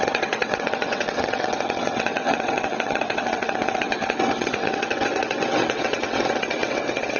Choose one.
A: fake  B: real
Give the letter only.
A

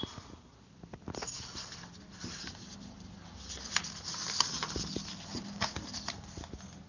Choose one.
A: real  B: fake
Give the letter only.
A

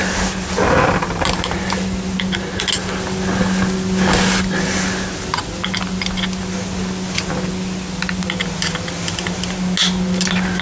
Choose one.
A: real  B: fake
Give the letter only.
A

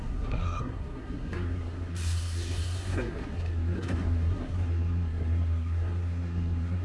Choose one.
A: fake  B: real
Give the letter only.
A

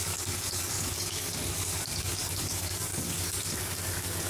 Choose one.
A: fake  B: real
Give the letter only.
A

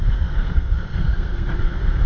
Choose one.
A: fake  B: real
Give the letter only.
A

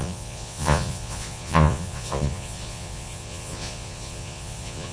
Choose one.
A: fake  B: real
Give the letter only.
A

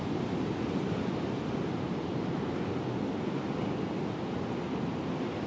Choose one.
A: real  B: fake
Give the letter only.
A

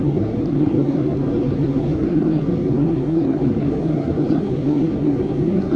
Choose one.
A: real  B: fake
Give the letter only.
B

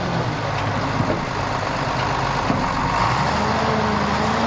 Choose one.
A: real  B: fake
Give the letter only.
A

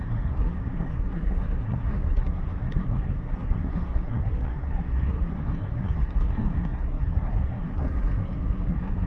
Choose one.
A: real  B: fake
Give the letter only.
B